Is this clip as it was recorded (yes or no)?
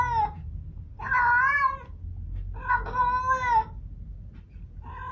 yes